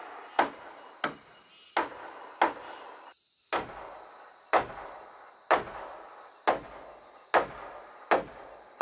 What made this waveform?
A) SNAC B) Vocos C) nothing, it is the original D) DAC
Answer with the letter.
C